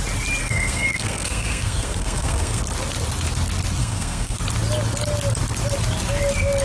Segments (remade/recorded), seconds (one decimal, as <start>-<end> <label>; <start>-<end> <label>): 0.0-0.4 recorded; 0.4-2.6 remade; 2.6-3.8 recorded; 3.8-4.4 remade; 4.4-6.6 recorded